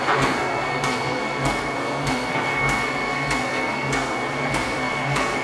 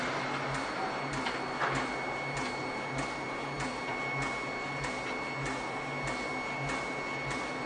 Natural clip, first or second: second